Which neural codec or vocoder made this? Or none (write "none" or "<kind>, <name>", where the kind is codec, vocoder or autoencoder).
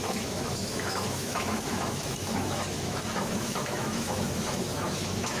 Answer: autoencoder, DAC-VAE